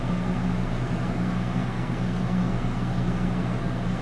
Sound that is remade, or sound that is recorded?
remade